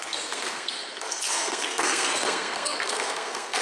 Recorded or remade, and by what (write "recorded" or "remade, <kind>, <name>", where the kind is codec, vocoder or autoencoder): remade, codec, SNAC